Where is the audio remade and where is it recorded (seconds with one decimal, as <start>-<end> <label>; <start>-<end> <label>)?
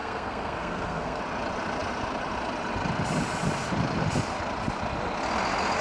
0.0-1.2 remade; 1.2-5.8 recorded